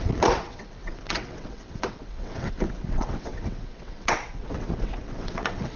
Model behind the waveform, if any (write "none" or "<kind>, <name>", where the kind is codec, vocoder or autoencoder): vocoder, WaveNeXt